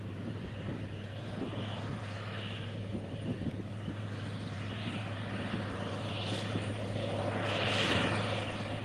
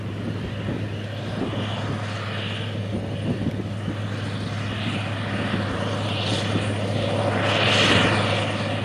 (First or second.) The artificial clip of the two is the first